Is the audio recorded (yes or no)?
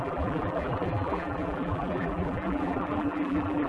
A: no